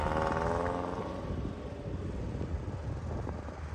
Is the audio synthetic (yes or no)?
no